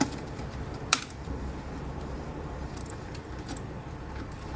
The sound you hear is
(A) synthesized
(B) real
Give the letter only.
A